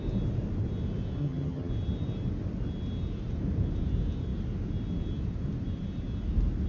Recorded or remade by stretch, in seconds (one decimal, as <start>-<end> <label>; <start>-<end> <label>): 0.0-1.2 recorded; 1.2-1.7 remade; 1.7-6.7 recorded